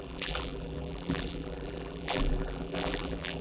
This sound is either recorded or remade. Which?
remade